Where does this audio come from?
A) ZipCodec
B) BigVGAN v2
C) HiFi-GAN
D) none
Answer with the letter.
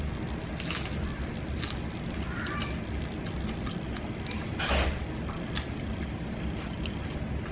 D